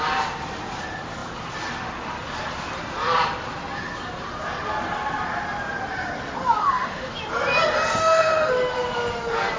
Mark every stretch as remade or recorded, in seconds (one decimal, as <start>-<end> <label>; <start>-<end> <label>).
0.0-6.6 recorded; 6.6-7.1 remade; 7.1-8.0 recorded; 8.0-8.5 remade; 8.5-9.6 recorded